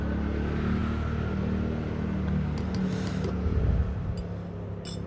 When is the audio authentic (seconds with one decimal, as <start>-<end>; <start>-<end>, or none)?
0.0-5.1

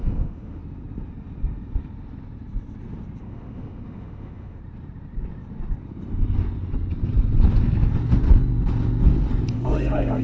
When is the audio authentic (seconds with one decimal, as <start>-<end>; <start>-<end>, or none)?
0.6-3.2; 4.6-9.5

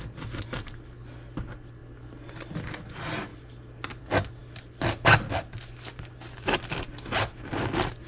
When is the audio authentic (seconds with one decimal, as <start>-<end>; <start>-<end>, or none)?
0.0-8.1

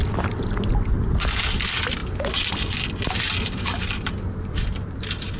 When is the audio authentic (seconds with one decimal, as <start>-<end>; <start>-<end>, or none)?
0.0-5.4

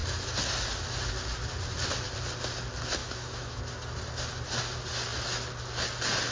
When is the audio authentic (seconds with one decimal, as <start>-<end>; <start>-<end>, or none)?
0.0-3.0; 3.6-6.3

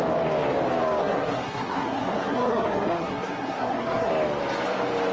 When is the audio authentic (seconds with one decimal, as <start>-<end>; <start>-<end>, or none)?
0.0-1.0; 4.1-5.1

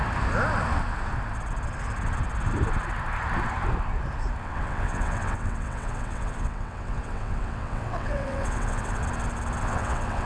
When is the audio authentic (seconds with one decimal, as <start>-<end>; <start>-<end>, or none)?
0.0-4.4; 9.0-9.6